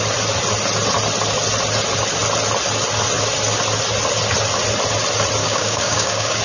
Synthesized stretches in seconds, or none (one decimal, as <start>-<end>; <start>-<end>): 5.4-6.4